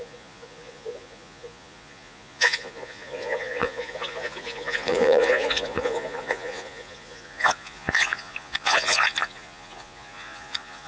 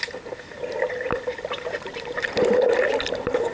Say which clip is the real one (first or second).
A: second